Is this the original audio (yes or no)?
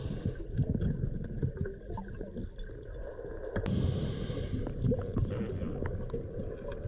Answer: yes